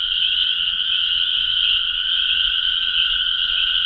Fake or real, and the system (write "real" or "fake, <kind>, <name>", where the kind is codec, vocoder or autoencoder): fake, vocoder, WaveNeXt